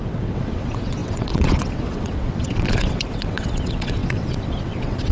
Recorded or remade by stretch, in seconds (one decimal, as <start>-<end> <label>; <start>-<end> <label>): 0.0-5.1 remade